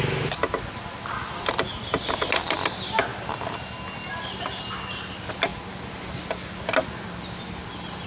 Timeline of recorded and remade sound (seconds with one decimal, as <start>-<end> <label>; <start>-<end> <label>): 0.0-8.1 recorded